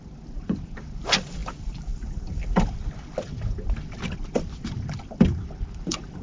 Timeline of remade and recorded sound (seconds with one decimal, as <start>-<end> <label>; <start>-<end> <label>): 0.0-6.2 remade